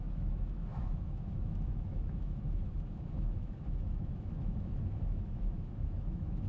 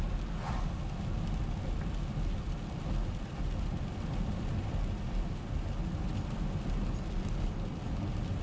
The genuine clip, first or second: second